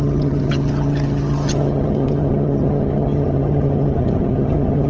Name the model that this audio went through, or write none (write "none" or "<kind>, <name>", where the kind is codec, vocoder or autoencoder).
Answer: vocoder, HiFi-GAN